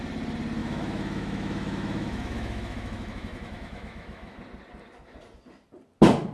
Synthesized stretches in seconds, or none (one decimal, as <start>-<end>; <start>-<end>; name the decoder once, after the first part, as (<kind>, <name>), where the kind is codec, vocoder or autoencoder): 0.6-4.4 (autoencoder, DAC-VAE)